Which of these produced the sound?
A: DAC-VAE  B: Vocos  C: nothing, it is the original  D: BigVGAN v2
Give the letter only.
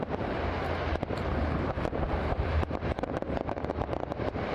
D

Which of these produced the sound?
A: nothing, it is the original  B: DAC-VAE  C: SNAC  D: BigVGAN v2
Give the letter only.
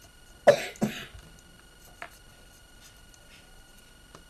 A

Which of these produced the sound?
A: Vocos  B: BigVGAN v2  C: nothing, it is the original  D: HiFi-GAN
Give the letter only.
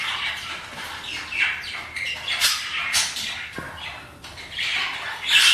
C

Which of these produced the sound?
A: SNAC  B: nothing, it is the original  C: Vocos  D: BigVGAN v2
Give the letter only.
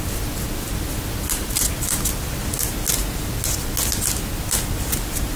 B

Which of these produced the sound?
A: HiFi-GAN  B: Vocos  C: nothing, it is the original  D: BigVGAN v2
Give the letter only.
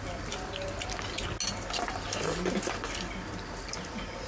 C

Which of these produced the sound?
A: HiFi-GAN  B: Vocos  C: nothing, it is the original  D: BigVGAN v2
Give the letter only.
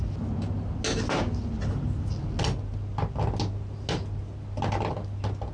C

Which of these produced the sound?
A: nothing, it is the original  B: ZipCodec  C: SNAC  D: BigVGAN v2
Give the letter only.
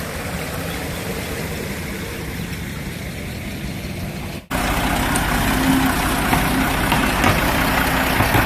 A